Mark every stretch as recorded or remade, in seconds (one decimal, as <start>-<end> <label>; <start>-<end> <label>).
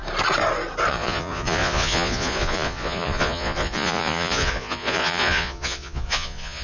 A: 0.0-0.9 recorded; 0.9-6.6 remade